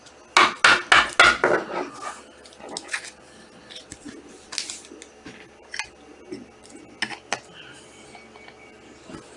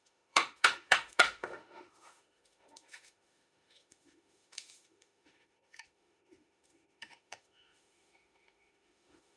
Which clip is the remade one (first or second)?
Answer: second